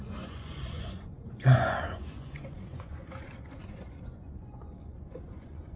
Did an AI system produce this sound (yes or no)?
yes